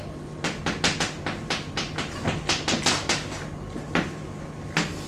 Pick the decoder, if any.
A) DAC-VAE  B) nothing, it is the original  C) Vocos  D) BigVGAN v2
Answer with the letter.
B